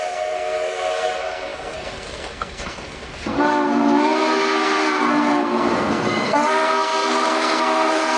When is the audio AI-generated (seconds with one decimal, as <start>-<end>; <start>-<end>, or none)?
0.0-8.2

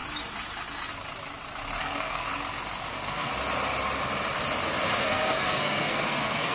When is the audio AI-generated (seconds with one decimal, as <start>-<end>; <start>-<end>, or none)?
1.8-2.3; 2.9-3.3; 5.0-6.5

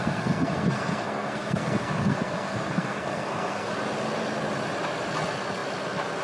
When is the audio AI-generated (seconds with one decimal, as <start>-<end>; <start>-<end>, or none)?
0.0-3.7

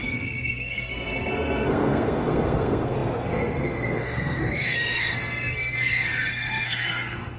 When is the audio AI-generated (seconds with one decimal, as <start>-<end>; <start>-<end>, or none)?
0.0-7.4

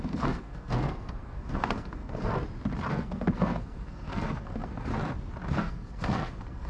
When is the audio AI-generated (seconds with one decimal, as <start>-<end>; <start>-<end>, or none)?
0.0-2.3; 2.9-4.9; 5.5-6.7

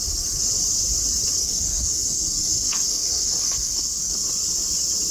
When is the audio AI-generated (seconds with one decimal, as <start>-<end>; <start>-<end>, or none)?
1.4-4.1

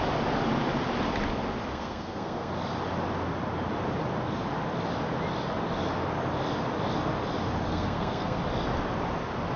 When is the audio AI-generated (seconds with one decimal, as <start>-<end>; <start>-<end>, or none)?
1.7-2.5; 7.7-8.4